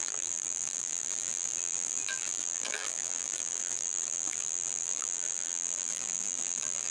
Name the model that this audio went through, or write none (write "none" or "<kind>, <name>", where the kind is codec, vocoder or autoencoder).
vocoder, BigVGAN v2